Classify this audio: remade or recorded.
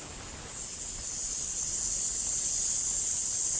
recorded